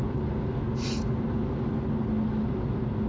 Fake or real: real